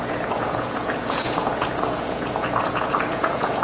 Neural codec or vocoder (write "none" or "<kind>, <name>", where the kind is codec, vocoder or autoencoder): vocoder, Vocos